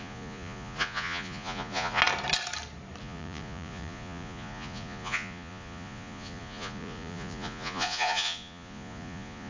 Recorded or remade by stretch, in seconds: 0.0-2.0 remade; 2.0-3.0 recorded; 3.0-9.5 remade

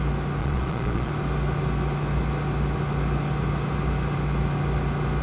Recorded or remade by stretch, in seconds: 0.0-0.4 recorded; 0.4-1.1 remade; 1.1-5.2 recorded

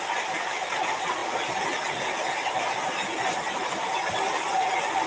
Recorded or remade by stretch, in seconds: 0.0-5.1 recorded